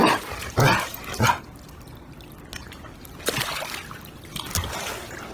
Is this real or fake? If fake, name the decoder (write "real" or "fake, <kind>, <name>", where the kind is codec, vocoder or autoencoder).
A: real